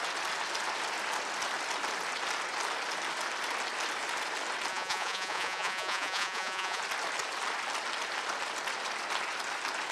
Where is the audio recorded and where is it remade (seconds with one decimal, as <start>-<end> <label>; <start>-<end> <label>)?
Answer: 0.0-4.7 recorded; 4.7-6.8 remade; 6.8-9.9 recorded